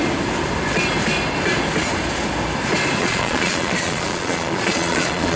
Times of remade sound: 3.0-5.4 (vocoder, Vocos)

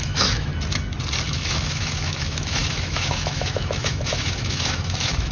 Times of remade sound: 0.0-0.5 (autoencoder, DAC-VAE); 1.3-5.3

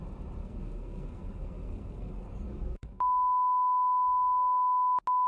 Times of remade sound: 0.4-3.0 (codec, SNAC)

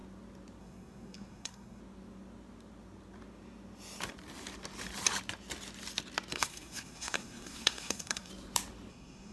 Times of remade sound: 0.6-1.8 (codec, SNAC); 6.3-8.3; 8.9-9.3

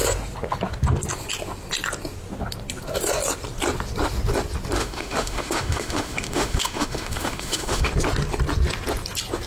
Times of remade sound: 4.8-7.9 (autoencoder, DAC-VAE)

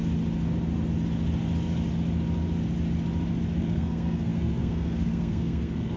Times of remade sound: 3.6-6.0 (codec, SNAC)

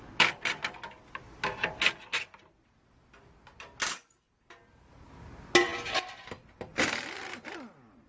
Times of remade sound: none